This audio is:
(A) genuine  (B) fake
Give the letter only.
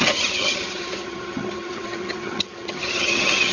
B